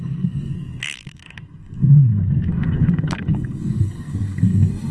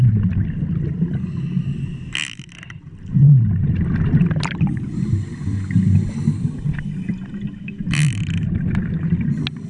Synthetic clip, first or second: first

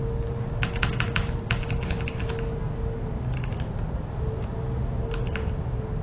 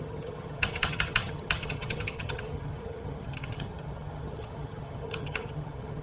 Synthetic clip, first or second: second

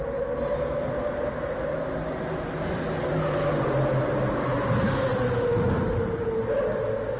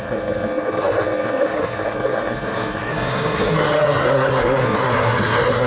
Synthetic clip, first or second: second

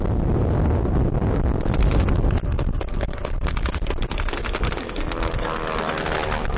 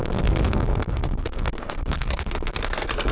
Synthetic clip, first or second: second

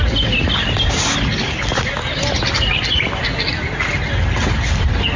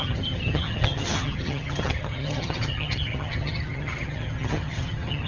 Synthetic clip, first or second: second